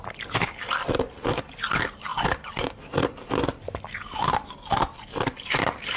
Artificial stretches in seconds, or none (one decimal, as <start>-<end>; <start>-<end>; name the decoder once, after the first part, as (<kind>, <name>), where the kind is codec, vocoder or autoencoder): none